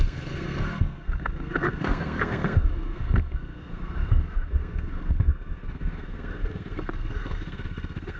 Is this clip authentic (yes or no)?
no